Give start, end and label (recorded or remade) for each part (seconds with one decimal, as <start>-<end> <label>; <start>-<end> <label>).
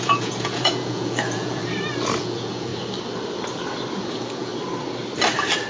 0.0-1.6 remade; 1.6-2.2 recorded; 2.2-2.7 remade; 2.7-4.0 recorded; 4.0-4.5 remade; 4.5-5.7 recorded